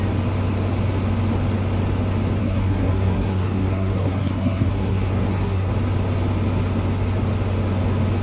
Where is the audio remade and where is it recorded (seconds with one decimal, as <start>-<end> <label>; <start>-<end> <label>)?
0.0-2.4 recorded; 2.4-5.7 remade; 5.7-8.2 recorded